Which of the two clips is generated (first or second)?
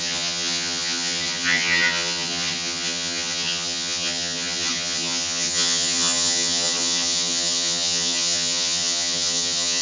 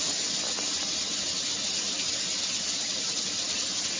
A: first